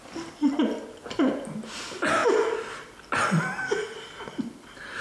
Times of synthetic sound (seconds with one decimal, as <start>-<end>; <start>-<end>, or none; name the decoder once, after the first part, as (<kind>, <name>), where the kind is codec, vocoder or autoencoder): none